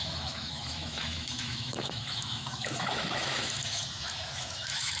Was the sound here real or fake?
fake